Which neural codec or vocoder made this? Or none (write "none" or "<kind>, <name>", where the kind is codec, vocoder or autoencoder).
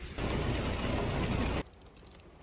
none